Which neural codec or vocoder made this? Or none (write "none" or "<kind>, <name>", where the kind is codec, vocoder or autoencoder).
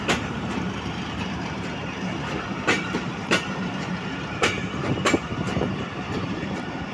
vocoder, BigVGAN v2